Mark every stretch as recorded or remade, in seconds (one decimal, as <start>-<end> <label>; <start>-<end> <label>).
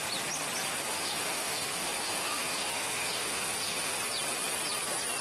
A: 0.0-0.9 recorded; 0.9-4.0 remade; 4.0-5.2 recorded